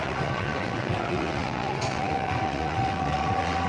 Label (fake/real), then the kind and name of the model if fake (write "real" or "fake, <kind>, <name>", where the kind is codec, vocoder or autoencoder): fake, vocoder, WaveNeXt